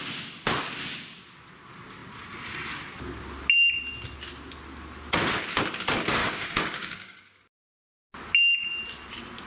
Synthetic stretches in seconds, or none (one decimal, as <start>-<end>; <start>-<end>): 6.2-7.4